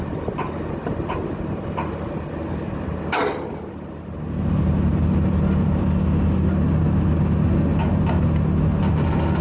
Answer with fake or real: real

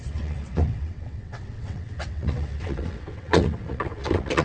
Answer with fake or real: fake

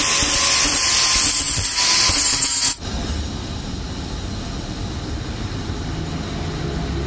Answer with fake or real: real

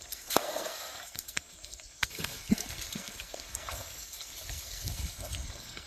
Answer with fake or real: fake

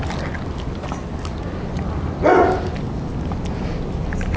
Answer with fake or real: real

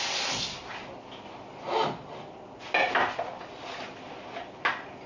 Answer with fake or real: real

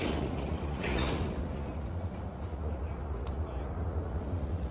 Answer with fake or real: fake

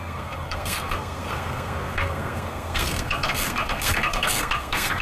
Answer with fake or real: fake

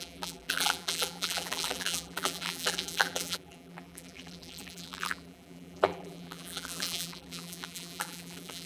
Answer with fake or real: fake